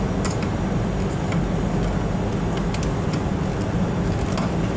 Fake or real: real